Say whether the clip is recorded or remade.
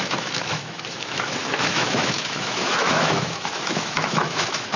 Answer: remade